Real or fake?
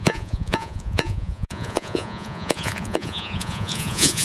fake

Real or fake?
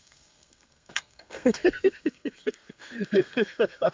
fake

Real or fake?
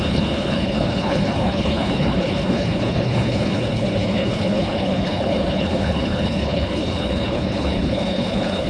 fake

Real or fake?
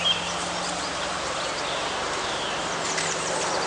real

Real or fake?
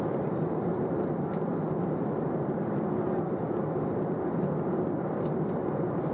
fake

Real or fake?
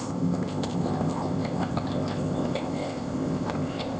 fake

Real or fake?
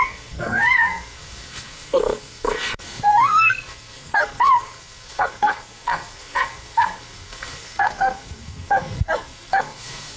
fake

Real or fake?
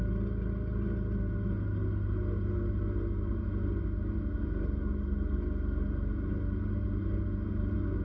real